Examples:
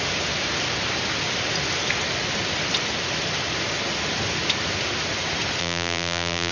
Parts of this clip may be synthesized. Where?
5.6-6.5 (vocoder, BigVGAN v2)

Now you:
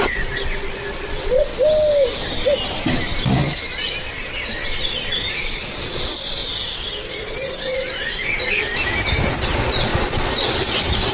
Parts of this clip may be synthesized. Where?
0.0-1.5 (vocoder, Vocos); 5.3-6.4; 7.1-8.7; 9.3-11.1

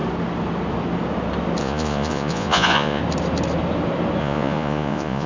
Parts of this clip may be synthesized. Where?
1.6-3.0 (vocoder, Vocos); 4.2-5.3

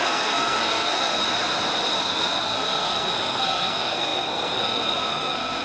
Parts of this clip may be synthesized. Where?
0.0-1.2 (codec, SNAC); 2.0-5.6

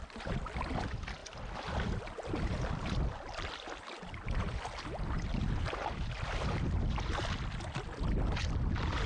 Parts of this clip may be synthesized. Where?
none

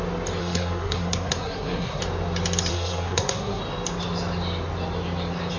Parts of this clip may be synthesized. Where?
0.4-2.0 (codec, SNAC); 2.7-3.6

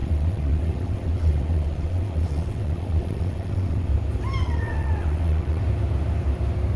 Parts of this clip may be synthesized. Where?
0.0-3.9 (vocoder, WaveNeXt); 4.4-5.6